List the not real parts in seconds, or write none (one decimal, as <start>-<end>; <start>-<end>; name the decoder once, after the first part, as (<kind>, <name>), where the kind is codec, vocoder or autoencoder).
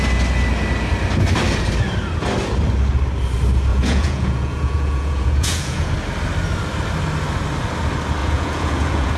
3.7-5.9 (vocoder, Vocos); 8.2-9.2